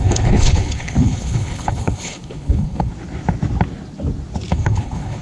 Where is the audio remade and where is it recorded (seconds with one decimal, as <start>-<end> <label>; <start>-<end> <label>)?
0.0-2.9 remade; 2.9-4.5 recorded; 4.5-5.2 remade